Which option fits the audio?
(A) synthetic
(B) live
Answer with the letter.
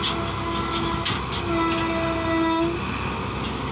B